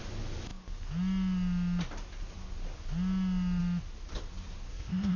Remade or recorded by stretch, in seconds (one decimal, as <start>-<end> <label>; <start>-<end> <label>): 0.0-4.7 recorded; 4.7-5.2 remade